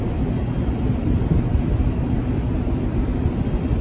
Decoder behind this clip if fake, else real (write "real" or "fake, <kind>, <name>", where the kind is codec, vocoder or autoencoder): real